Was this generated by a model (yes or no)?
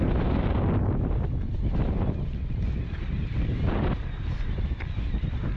no